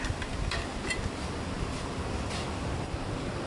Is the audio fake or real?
real